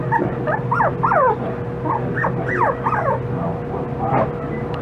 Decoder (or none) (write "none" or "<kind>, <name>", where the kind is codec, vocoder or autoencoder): vocoder, BigVGAN v2